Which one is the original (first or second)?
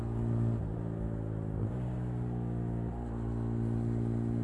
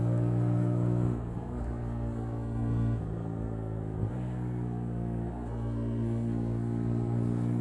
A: first